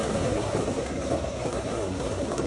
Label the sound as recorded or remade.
remade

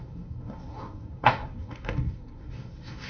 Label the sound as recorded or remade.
remade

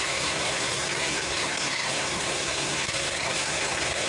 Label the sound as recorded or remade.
remade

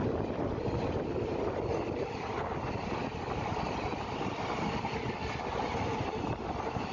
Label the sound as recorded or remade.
recorded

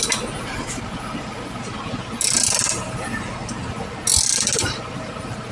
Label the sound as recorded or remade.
recorded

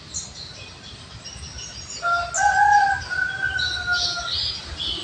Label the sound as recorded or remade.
recorded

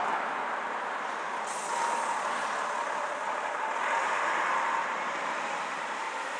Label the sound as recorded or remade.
recorded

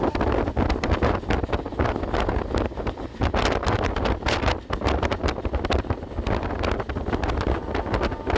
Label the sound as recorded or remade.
recorded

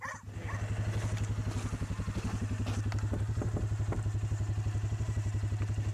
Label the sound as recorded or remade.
recorded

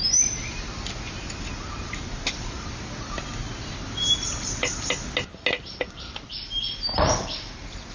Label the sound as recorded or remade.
recorded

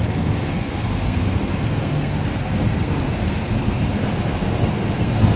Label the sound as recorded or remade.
remade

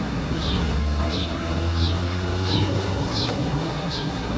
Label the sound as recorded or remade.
remade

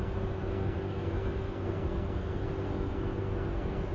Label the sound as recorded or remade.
remade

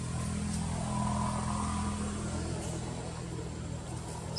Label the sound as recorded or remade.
recorded